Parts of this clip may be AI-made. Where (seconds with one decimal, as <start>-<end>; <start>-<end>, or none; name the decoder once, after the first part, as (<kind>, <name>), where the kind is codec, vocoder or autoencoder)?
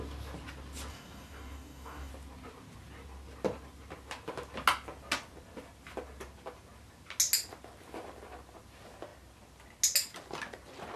0.9-2.1 (codec, DAC)